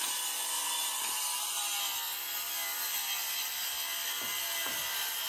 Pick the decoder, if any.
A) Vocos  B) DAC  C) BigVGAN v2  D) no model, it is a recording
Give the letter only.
D